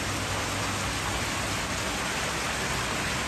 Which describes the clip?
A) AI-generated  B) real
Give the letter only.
B